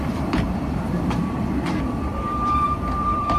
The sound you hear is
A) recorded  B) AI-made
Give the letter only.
B